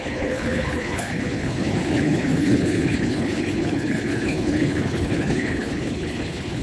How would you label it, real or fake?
fake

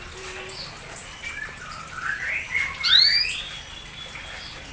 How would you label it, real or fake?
real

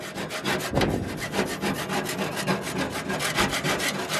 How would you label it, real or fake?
real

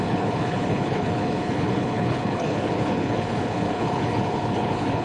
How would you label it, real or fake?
fake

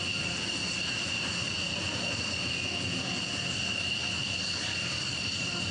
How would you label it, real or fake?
real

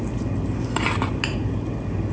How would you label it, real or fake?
real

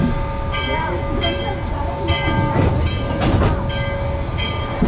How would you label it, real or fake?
real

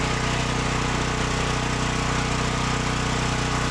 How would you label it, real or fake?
real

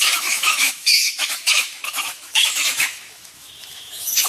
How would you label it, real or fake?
fake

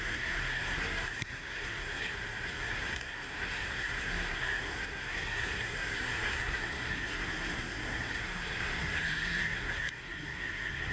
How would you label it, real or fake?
fake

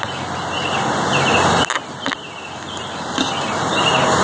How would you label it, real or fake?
real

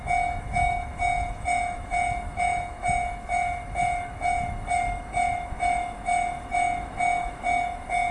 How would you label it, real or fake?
fake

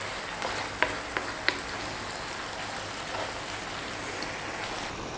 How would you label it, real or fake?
real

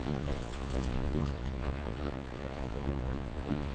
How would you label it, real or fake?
fake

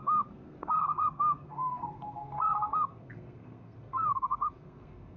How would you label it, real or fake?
fake